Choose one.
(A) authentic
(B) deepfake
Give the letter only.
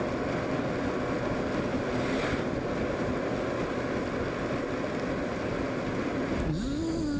A